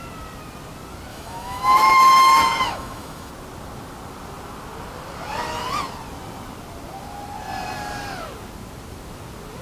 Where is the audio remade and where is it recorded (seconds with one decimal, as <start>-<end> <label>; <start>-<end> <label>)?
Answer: 0.0-1.1 recorded; 1.1-3.3 remade; 3.3-9.6 recorded